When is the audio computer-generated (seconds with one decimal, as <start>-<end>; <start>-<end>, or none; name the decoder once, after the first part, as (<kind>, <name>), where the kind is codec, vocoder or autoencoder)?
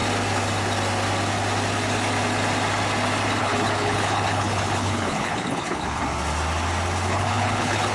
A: 3.4-6.0 (codec, HILCodec); 7.1-7.9